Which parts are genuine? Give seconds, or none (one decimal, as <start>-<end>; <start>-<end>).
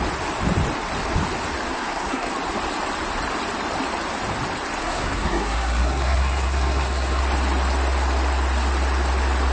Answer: 0.0-1.7; 2.3-4.8; 7.2-9.5